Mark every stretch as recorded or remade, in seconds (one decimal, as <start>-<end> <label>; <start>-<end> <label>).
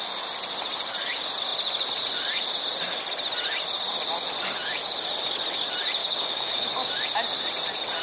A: 0.0-6.0 recorded; 6.0-6.9 remade; 6.9-8.0 recorded